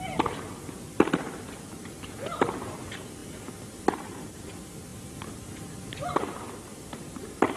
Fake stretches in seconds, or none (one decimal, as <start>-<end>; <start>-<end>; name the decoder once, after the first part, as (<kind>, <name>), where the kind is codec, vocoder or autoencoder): none